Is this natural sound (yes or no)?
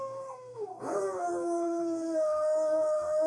no